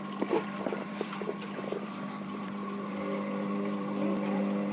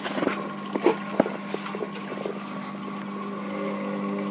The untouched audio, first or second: second